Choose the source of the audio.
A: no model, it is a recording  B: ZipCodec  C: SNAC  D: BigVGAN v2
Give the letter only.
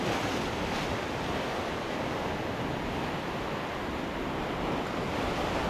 A